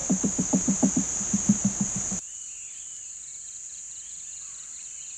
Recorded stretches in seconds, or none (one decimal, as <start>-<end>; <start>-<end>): 0.9-1.6; 2.7-5.2